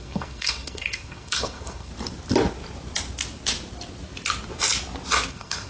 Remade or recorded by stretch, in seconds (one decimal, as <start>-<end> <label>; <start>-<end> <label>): 0.0-1.9 remade; 1.9-5.3 recorded; 5.3-5.7 remade